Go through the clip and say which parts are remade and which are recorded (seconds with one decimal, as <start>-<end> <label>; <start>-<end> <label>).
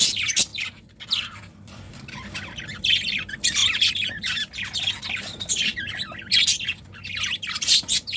0.0-3.6 remade; 3.6-6.6 recorded; 6.6-8.2 remade